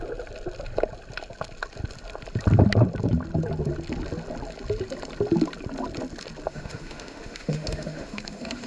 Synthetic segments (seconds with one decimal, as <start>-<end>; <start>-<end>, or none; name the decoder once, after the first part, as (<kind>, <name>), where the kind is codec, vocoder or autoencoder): 6.5-8.7 (autoencoder, DAC-VAE)